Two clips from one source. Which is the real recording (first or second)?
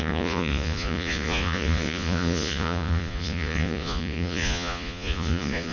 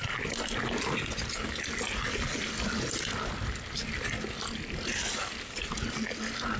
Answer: second